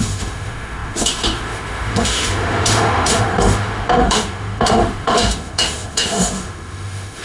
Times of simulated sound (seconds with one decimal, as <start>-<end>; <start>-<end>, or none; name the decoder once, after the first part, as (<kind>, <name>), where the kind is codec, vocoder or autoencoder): 0.0-7.2 (autoencoder, DAC-VAE)